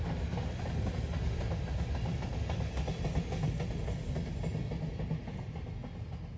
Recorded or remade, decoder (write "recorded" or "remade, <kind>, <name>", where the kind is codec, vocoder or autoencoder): recorded